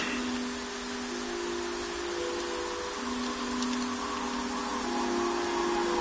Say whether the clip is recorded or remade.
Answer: recorded